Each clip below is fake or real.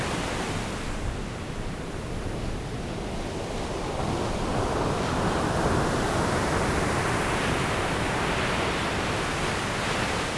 real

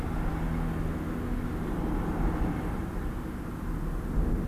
real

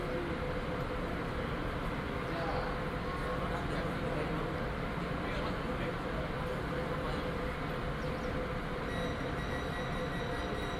real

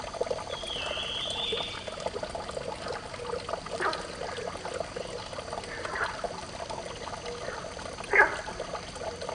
real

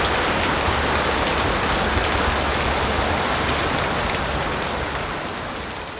real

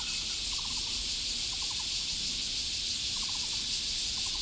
real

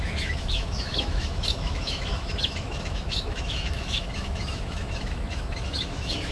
fake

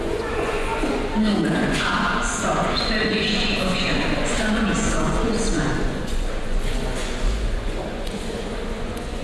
fake